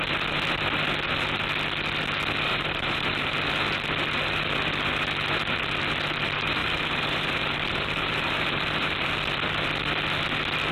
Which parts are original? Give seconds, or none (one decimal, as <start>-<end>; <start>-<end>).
0.0-2.5; 3.3-6.6; 9.1-10.7